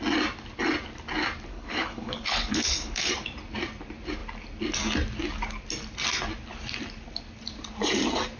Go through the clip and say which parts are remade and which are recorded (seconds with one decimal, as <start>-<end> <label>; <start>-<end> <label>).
0.0-1.5 recorded; 1.5-3.1 remade; 3.1-8.4 recorded